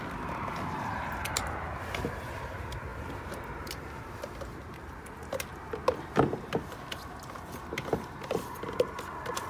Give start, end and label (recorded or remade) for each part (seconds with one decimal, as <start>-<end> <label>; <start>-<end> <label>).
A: 0.0-5.5 remade; 5.5-8.3 recorded; 8.3-9.5 remade